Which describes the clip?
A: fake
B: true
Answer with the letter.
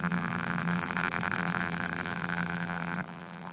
A